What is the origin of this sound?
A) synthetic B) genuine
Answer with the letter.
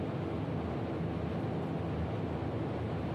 B